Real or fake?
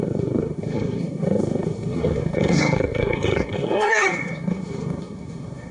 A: fake